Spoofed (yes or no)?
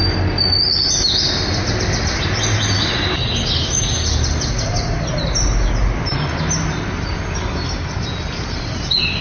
no